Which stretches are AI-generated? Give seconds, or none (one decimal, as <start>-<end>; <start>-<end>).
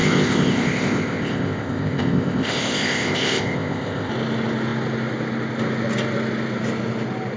0.0-4.1